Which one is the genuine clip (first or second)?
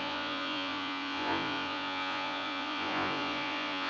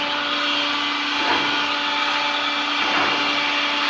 second